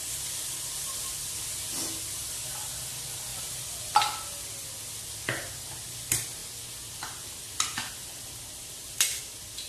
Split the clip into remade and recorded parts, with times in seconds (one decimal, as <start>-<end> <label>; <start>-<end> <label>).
0.0-3.3 recorded; 3.3-4.7 remade; 4.7-9.7 recorded